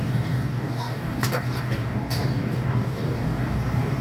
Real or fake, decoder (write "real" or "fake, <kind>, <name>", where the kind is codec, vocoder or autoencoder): fake, codec, DAC